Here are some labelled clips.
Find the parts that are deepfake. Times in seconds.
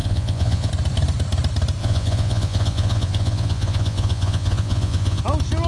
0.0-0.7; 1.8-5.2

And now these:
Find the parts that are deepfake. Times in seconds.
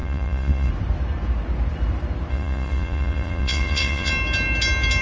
0.0-0.7; 2.3-4.1